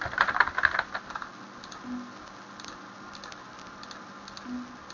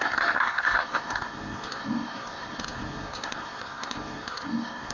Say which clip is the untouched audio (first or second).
first